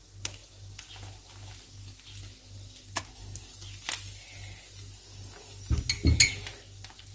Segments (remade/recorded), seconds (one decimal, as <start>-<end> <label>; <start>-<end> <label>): 0.0-7.1 recorded